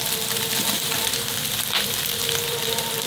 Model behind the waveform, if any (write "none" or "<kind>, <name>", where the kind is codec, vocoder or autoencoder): vocoder, BigVGAN v2